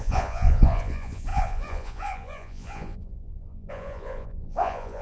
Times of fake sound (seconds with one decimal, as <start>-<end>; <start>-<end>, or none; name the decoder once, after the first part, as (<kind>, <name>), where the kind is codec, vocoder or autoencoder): 0.0-5.0 (vocoder, Vocos)